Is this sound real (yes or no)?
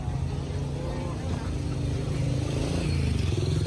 yes